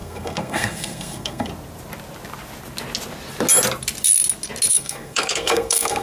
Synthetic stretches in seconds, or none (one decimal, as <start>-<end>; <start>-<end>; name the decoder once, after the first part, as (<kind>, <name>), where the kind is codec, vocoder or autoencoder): 0.0-1.5 (codec, SNAC); 4.7-6.0